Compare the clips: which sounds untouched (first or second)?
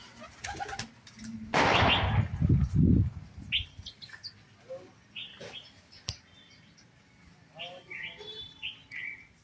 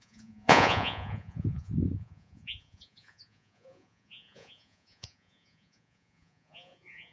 first